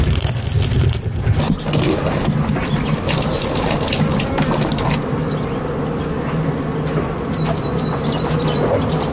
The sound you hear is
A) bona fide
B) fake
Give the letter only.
A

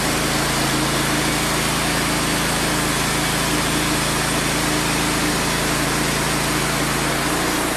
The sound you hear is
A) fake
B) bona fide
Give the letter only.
B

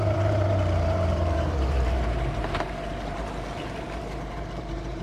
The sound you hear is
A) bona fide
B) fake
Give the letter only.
B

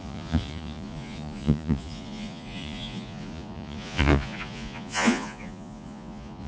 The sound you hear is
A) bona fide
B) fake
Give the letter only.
B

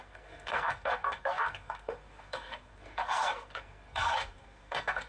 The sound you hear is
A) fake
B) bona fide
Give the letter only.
A